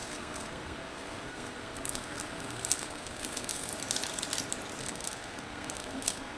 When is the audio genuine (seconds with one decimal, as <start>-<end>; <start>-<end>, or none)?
3.7-4.8